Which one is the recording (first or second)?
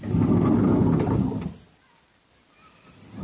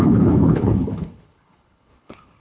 first